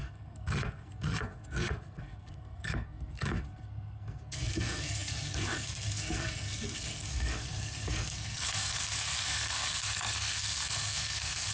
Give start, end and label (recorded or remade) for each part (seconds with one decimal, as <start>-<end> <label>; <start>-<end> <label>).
0.0-11.5 remade